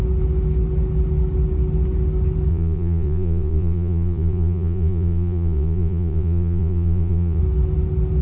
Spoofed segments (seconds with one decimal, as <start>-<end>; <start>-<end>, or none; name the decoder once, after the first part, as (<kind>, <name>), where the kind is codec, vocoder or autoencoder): 2.5-7.4 (vocoder, Vocos)